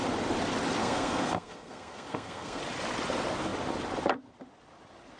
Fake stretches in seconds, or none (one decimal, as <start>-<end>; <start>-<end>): 0.8-2.6